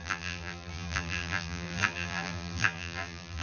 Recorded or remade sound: remade